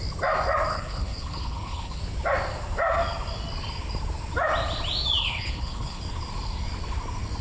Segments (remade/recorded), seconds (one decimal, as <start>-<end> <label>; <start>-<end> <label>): 0.0-0.7 recorded; 0.7-2.0 remade; 2.0-5.2 recorded; 5.2-6.0 remade; 6.0-7.4 recorded